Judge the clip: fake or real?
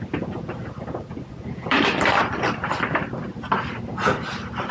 fake